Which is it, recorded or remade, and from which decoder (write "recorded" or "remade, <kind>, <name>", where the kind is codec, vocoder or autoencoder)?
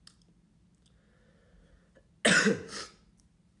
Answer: recorded